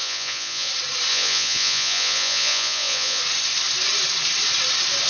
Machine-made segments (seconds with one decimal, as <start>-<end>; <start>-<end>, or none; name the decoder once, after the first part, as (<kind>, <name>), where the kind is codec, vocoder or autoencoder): 0.0-0.7 (vocoder, Vocos); 1.1-3.2